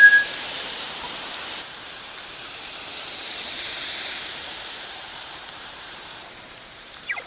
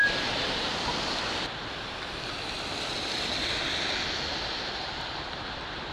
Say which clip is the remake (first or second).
first